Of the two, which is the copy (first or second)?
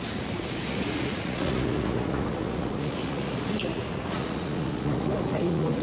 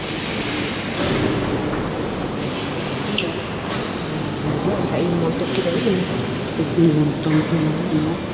first